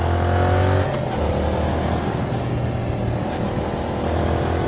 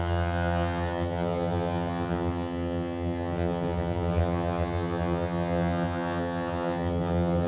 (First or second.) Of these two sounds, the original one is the first